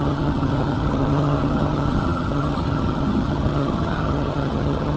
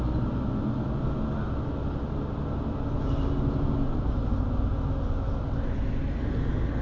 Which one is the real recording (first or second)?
second